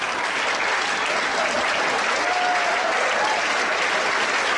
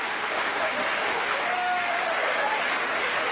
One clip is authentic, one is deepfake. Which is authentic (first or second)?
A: first